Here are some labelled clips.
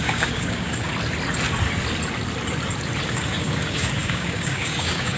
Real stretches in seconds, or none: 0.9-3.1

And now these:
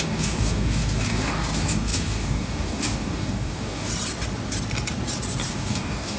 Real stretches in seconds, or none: 3.9-5.5

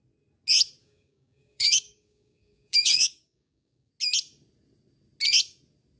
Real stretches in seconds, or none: 0.0-0.8; 3.9-6.0

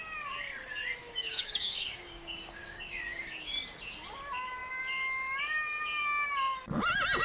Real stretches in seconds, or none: 0.0-1.0; 3.5-7.2

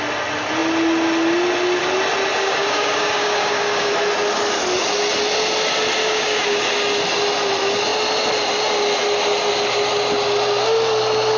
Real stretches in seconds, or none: 0.0-2.3; 3.9-6.0; 6.6-11.4

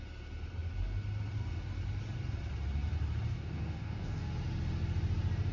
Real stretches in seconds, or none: 0.0-3.3; 4.3-5.5

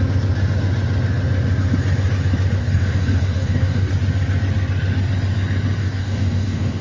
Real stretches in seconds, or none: 0.0-2.6; 3.9-5.8